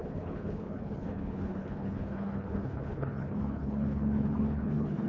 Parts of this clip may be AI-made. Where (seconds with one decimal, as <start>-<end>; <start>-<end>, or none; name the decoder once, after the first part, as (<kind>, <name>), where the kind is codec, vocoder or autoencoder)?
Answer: 0.0-5.1 (codec, HILCodec)